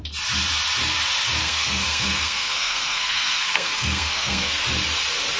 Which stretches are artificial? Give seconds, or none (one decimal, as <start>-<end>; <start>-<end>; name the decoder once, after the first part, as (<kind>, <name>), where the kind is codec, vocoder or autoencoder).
1.4-4.6 (codec, SNAC)